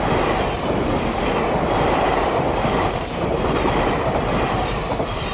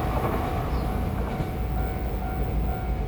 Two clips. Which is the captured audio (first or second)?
second